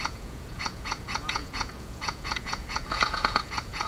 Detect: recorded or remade remade